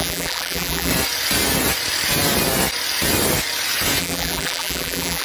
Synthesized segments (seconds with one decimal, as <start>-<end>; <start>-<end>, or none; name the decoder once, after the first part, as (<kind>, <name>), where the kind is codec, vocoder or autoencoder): 0.0-0.9 (vocoder, BigVGAN v2); 4.0-5.2